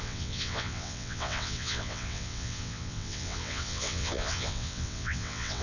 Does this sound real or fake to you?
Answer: fake